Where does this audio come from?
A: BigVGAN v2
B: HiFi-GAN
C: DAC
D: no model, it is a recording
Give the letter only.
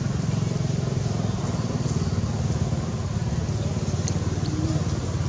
D